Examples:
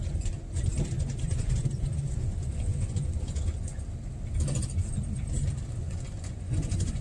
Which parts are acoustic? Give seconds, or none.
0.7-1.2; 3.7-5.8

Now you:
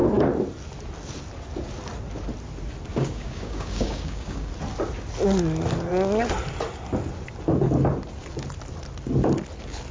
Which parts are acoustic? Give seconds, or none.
0.0-2.9; 4.5-9.9

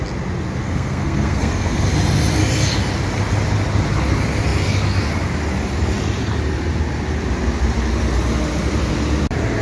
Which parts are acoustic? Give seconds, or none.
0.0-0.6; 1.9-9.6

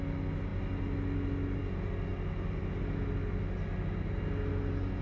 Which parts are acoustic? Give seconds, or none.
0.0-5.0

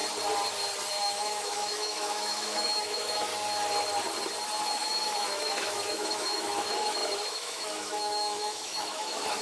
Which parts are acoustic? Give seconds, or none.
0.0-0.9; 3.3-4.6